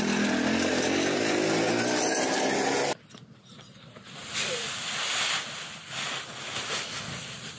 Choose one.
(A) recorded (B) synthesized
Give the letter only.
A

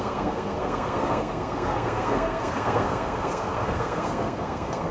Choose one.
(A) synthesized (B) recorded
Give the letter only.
A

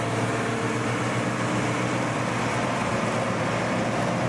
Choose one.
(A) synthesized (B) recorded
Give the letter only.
B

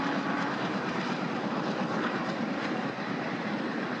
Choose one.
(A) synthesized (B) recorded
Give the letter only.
A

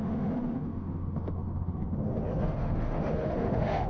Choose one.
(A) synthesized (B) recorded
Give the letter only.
A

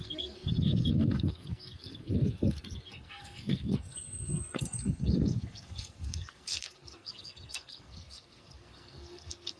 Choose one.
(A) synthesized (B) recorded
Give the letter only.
A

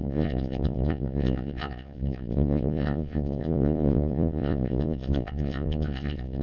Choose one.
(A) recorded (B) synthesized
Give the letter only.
B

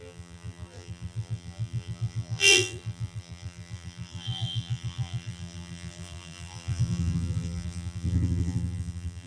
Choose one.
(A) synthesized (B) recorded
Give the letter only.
A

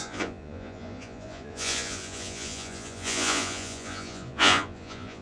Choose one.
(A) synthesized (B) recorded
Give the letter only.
A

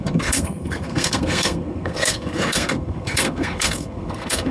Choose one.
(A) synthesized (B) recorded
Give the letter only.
A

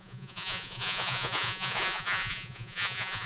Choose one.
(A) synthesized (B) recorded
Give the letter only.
A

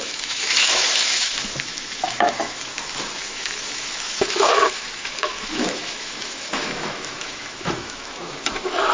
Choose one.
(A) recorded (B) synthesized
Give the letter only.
B